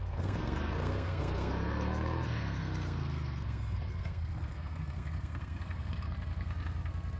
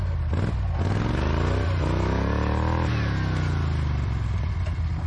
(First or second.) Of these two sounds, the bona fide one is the second